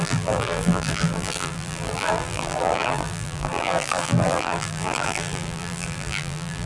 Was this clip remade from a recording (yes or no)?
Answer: yes